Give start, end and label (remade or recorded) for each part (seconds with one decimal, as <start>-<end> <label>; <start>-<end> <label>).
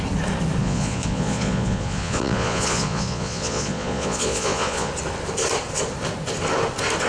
0.0-0.6 recorded; 0.6-4.9 remade; 4.9-7.1 recorded